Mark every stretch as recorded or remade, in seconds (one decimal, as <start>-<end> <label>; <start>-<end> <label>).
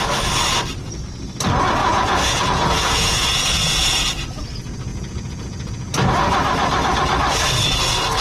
0.0-1.8 recorded; 1.8-4.0 remade; 4.0-4.9 recorded; 4.9-5.9 remade; 5.9-8.2 recorded